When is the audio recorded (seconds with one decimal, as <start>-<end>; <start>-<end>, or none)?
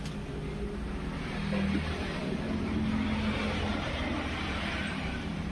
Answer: 0.0-3.7; 4.3-4.8